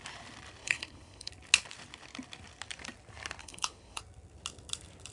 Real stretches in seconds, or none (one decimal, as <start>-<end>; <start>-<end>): 0.0-0.6; 1.3-3.4; 4.0-5.1